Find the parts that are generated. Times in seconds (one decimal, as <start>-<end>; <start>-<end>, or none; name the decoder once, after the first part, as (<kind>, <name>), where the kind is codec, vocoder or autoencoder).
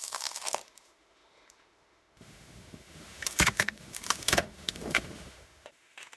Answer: 0.0-6.2 (autoencoder, DAC-VAE)